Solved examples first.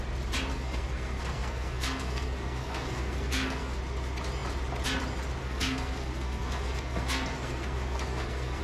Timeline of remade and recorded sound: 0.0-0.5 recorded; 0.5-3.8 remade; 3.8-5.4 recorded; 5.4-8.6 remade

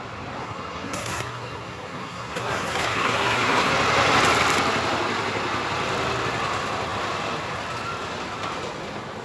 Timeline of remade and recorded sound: 0.0-0.4 recorded; 0.4-3.7 remade; 3.7-9.2 recorded

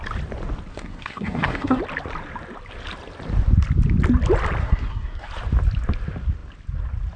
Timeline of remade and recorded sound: 0.0-0.7 recorded; 0.7-1.8 remade; 1.8-4.6 recorded; 4.6-5.3 remade; 5.3-7.2 recorded